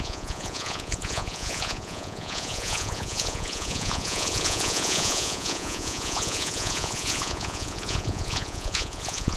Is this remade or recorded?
remade